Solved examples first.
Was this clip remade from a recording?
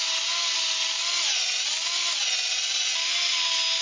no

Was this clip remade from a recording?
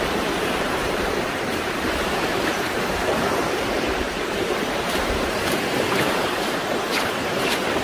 yes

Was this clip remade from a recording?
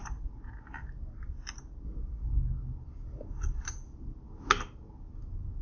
no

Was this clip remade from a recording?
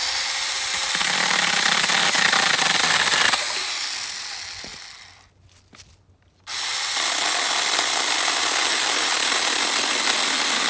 no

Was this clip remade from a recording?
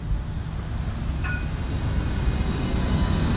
no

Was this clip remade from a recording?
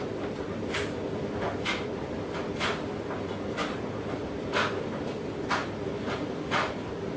yes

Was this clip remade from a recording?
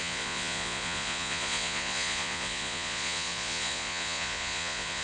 yes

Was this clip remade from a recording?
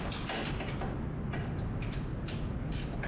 no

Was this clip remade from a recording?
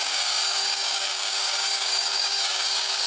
yes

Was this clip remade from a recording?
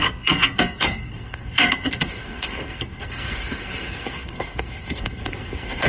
yes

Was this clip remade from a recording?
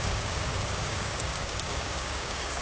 yes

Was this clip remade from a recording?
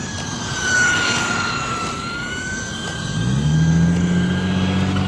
no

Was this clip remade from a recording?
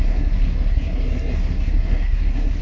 yes